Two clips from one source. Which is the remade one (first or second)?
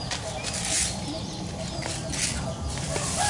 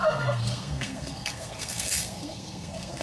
second